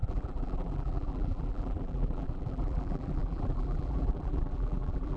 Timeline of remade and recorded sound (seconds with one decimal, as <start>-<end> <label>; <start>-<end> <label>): 0.0-5.2 remade